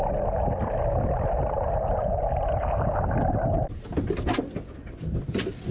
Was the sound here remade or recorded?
recorded